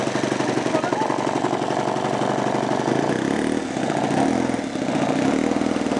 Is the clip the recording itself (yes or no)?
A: yes